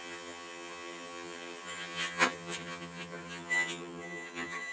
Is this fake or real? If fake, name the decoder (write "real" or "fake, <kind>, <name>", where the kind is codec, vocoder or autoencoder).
fake, vocoder, HiFi-GAN